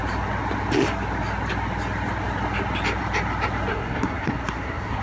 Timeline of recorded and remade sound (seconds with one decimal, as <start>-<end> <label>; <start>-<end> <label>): 0.0-3.7 recorded; 3.7-5.0 remade